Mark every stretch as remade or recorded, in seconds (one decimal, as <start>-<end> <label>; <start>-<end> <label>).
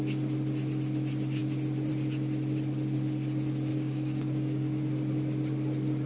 0.0-3.7 recorded; 3.7-4.8 remade; 4.8-6.1 recorded